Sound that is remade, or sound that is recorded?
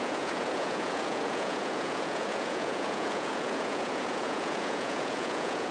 remade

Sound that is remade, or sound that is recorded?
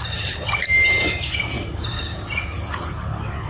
recorded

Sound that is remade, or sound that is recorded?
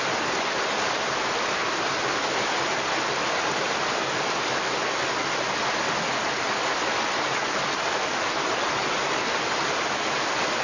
recorded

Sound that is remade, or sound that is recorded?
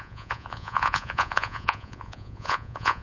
remade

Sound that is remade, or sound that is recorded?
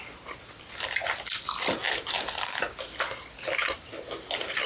recorded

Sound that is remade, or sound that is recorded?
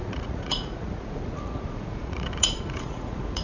remade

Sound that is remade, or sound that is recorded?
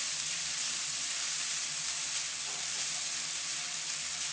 remade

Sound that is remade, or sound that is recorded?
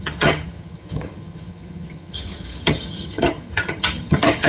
remade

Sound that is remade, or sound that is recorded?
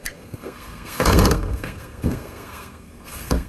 remade